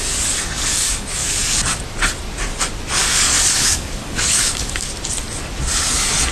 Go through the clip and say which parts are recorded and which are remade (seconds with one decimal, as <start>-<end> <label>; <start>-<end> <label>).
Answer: 0.0-0.6 recorded; 0.6-1.6 remade; 1.6-3.0 recorded; 3.0-4.9 remade; 4.9-6.3 recorded